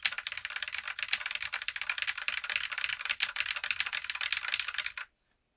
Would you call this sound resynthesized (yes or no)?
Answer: no